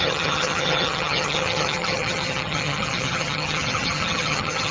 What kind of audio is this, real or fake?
fake